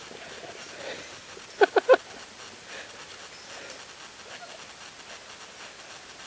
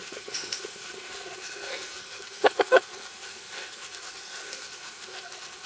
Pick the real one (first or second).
first